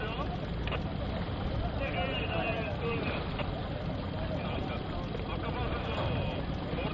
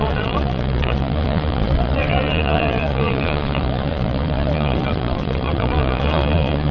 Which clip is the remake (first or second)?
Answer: second